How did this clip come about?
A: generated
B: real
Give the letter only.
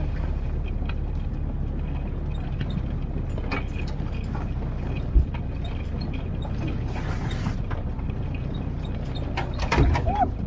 B